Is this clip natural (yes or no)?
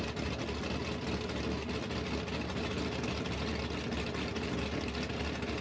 yes